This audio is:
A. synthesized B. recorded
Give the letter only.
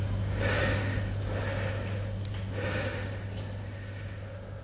B